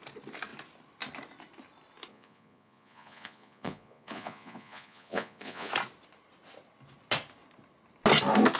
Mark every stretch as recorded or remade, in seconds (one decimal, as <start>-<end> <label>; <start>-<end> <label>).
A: 0.0-2.1 recorded; 2.1-5.7 remade; 5.7-8.6 recorded